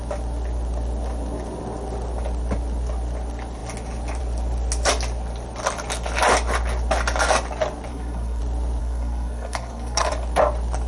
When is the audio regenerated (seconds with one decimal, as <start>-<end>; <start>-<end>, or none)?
7.9-8.4; 8.8-10.1